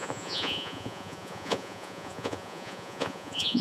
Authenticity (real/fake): fake